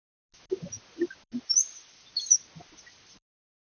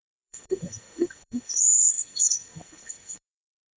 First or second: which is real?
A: first